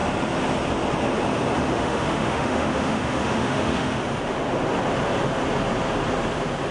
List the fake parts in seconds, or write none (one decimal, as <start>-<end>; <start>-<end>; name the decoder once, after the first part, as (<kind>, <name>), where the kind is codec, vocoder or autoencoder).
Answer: 1.7-4.0 (autoencoder, DAC-VAE)